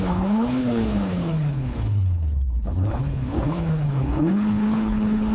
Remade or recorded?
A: remade